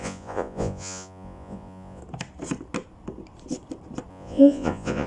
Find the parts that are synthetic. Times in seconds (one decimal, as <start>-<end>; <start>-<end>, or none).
0.0-2.0; 4.1-5.1